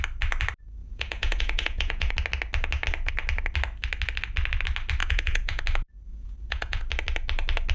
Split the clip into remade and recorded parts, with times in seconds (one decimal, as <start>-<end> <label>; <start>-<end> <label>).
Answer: 0.0-0.8 recorded; 0.8-2.1 remade; 2.1-5.0 recorded; 5.0-5.6 remade; 5.6-6.1 recorded; 6.1-6.8 remade; 6.8-7.7 recorded